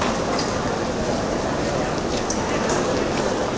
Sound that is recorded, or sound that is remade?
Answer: recorded